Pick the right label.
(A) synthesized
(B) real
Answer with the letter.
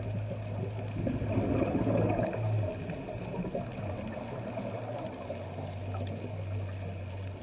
B